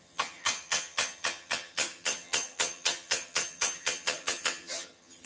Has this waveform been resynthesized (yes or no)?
yes